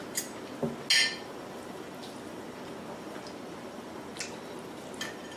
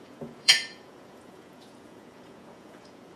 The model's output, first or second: second